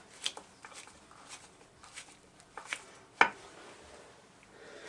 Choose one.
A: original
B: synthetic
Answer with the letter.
A